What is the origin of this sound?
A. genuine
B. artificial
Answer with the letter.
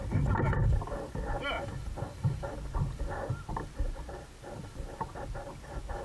A